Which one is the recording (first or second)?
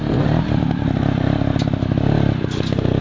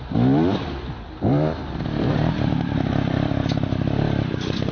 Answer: first